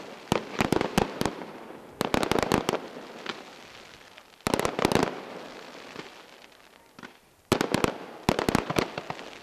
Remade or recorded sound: recorded